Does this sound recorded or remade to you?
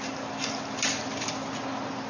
recorded